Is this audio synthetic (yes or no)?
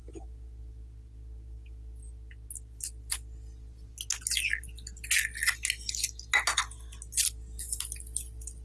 no